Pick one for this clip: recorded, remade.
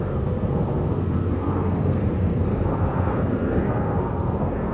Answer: remade